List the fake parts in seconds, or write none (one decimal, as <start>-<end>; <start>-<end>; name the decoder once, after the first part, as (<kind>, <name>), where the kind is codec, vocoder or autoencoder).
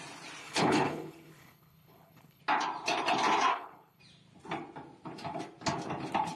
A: 0.4-2.4 (codec, HILCodec); 3.5-4.0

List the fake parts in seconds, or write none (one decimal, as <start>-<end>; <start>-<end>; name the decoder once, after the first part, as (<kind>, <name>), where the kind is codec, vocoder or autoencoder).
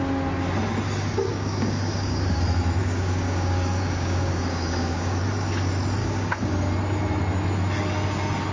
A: 1.3-2.4 (codec, DAC); 2.8-5.2; 6.0-6.5